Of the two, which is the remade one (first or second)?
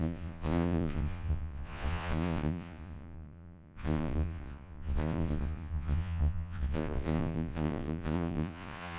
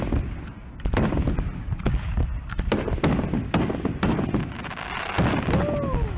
first